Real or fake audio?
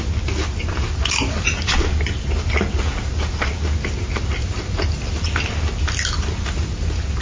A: real